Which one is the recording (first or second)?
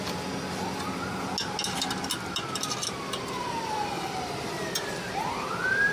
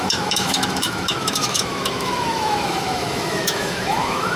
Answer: first